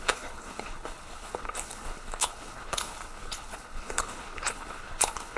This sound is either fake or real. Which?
fake